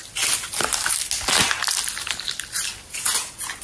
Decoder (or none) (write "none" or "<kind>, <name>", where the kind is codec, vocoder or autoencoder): none